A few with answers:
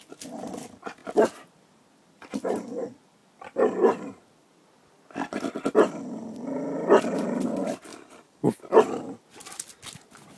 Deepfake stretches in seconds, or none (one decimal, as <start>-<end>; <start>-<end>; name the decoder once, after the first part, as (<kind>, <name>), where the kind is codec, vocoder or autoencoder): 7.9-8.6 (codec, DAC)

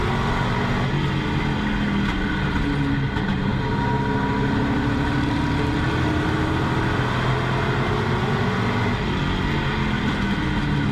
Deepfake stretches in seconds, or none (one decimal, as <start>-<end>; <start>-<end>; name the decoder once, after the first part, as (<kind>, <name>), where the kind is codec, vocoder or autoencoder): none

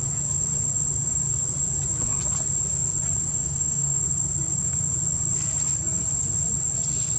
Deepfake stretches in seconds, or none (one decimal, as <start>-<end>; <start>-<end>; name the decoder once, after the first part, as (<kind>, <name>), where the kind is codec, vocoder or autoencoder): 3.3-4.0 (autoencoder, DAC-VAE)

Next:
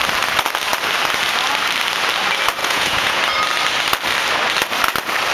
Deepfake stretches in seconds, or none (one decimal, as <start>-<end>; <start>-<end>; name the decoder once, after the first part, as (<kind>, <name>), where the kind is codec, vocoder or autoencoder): 2.6-3.2 (vocoder, Vocos)

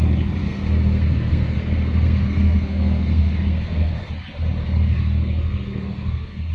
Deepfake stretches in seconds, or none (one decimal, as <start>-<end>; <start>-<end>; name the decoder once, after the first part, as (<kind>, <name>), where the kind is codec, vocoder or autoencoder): 0.4-4.1 (codec, SNAC); 4.6-6.5

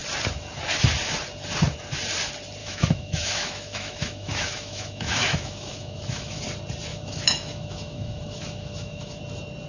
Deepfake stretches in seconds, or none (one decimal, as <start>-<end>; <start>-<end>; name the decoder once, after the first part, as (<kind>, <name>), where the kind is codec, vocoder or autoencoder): 2.6-6.4 (autoencoder, DAC-VAE); 6.9-9.2

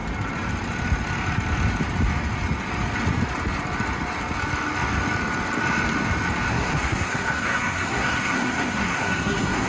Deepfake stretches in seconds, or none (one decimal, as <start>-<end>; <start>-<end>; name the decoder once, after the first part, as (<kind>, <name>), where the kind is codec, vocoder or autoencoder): 6.5-9.7 (codec, SNAC)

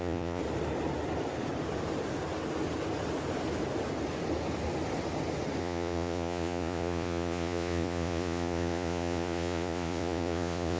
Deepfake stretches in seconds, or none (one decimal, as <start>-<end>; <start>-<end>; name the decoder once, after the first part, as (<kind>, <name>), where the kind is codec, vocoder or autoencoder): 0.0-0.4 (vocoder, Vocos); 5.6-10.8